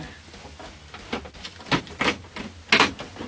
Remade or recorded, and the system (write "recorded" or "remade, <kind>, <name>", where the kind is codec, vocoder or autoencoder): recorded